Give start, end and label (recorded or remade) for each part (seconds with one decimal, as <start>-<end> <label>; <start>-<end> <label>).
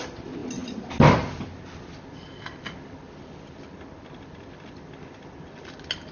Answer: 0.0-6.1 recorded